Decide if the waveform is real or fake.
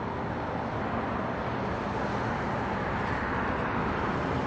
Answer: real